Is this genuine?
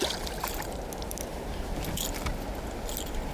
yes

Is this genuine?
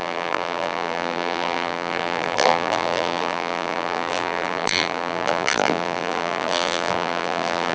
no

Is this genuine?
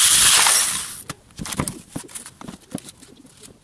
no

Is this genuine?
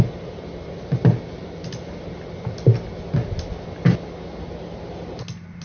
yes